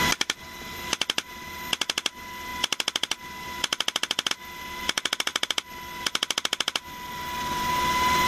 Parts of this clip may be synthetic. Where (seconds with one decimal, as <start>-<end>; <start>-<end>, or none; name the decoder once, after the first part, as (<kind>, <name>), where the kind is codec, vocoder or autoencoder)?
none